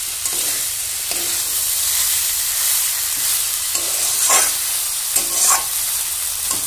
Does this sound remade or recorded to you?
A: recorded